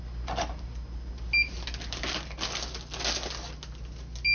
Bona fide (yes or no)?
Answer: yes